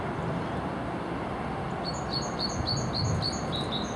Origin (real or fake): real